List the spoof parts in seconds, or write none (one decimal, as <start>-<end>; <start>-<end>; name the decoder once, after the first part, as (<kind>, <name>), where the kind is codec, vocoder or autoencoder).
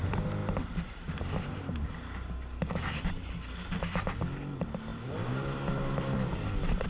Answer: 4.9-6.3 (vocoder, BigVGAN v2)